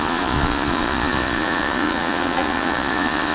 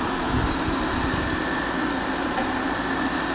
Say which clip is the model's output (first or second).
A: first